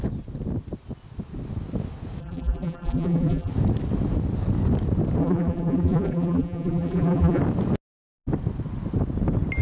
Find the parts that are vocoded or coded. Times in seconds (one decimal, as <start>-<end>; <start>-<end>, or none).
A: 2.2-3.5; 5.2-7.4